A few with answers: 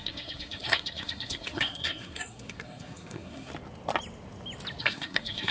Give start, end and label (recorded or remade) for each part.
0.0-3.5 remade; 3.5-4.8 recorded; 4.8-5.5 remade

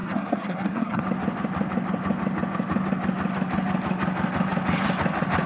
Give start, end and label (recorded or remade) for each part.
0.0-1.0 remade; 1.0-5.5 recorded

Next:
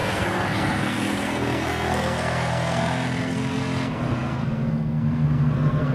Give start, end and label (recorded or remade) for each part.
0.0-5.9 remade